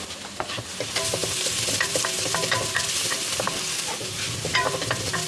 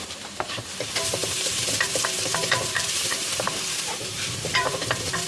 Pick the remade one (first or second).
second